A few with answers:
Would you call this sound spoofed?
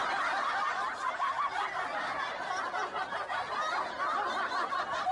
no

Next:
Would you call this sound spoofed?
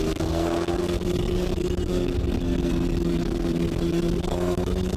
yes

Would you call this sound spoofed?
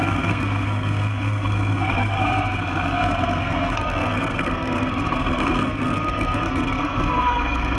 yes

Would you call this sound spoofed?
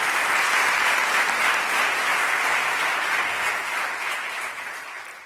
no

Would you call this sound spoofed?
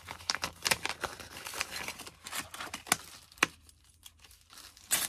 no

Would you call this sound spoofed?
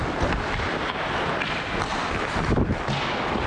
no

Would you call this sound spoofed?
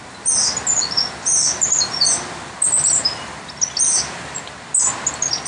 no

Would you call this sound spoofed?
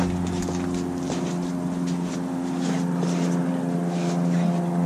no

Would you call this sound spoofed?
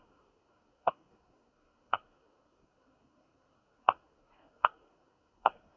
yes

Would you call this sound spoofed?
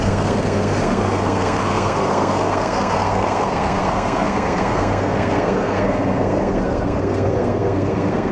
yes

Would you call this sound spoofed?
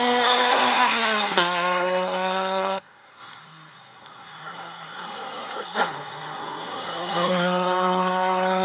yes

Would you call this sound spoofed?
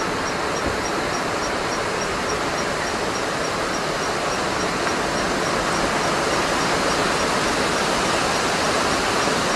no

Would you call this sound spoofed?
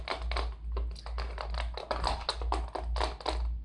no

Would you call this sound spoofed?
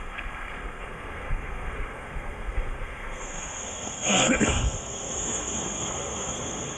yes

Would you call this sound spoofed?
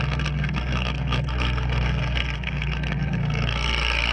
yes